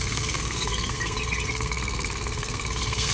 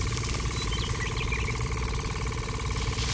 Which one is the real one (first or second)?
second